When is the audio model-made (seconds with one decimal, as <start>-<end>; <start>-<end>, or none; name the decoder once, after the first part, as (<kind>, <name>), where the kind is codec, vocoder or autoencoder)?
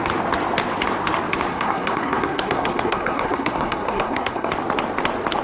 1.5-4.5 (codec, SNAC)